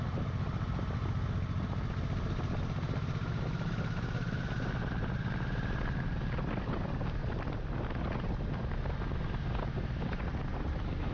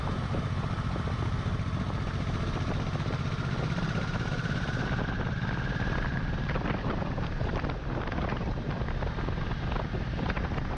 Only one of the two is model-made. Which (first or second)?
second